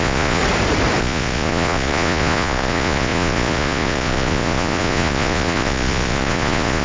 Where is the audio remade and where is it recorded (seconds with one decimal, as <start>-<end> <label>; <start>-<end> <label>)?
0.0-0.4 remade; 0.4-1.0 recorded; 1.0-6.8 remade